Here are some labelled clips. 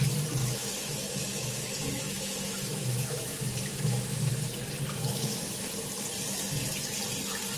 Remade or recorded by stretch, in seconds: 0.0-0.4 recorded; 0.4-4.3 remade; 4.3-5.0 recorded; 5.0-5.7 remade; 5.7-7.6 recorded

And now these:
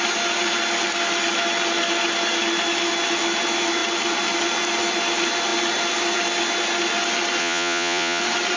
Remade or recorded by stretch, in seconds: 0.0-7.4 recorded; 7.4-8.2 remade; 8.2-8.6 recorded

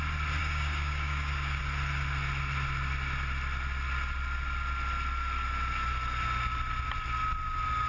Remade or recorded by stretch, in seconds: 0.0-0.4 recorded; 0.4-1.6 remade; 1.6-7.9 recorded

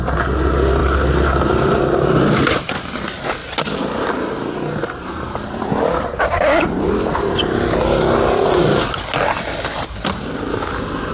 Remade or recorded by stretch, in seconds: 0.0-11.1 recorded